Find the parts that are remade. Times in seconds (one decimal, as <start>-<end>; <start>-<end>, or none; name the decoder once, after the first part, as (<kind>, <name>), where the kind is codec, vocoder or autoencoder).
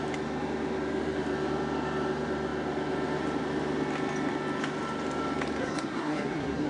5.6-6.7 (codec, SNAC)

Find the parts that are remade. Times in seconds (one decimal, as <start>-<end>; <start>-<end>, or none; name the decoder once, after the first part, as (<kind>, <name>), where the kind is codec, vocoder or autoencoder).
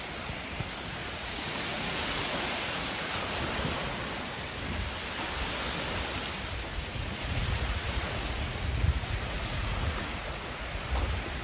1.0-3.2 (vocoder, Vocos); 6.7-10.6